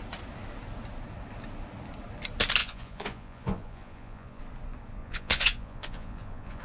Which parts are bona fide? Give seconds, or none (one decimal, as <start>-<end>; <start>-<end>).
0.0-2.6; 4.4-5.0